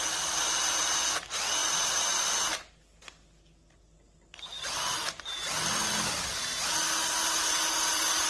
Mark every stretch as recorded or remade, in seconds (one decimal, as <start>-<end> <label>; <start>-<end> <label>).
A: 0.0-1.6 recorded; 1.6-2.2 remade; 2.2-8.3 recorded